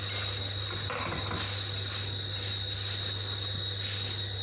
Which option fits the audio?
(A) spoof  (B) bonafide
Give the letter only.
B